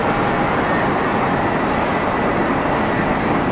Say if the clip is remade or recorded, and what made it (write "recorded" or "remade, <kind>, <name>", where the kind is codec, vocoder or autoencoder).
recorded